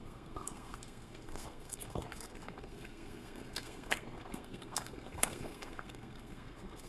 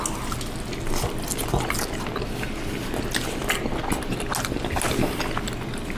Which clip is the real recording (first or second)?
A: second